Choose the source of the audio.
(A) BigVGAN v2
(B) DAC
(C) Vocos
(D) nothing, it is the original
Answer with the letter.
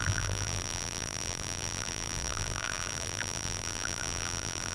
A